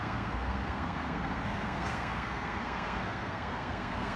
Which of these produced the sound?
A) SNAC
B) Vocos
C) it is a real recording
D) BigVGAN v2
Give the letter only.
A